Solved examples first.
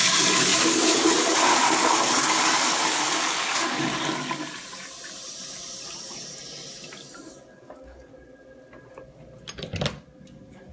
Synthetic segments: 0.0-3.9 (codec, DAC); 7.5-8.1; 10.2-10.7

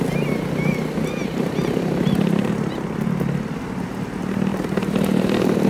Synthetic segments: 1.2-2.5 (vocoder, BigVGAN v2); 4.5-5.7

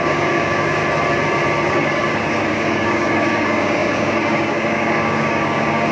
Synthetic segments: 0.0-0.8 (codec, DAC); 1.7-5.9

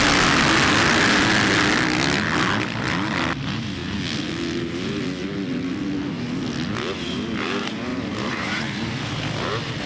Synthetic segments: 7.9-8.6 (vocoder, BigVGAN v2)

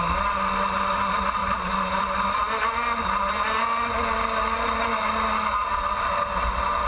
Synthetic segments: none